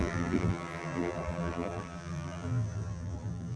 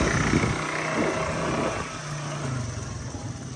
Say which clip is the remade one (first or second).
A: first